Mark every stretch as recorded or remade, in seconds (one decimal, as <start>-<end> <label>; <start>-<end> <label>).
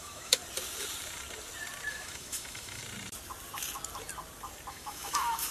0.0-0.4 remade; 0.4-1.9 recorded; 1.9-2.8 remade; 2.8-4.7 recorded; 4.7-5.5 remade